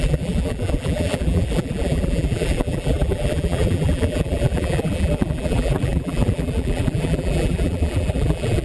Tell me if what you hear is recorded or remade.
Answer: remade